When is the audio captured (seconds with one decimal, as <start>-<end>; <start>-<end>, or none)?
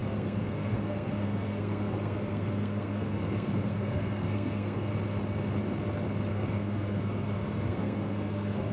4.9-6.3